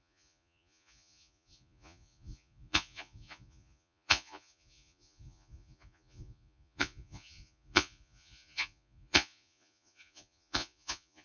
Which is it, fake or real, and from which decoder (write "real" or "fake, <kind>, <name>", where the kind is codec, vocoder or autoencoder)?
fake, vocoder, Vocos